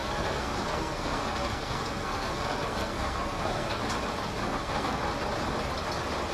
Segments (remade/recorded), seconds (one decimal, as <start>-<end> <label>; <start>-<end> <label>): 0.0-3.8 remade; 3.8-4.4 recorded; 4.4-5.0 remade; 5.0-6.3 recorded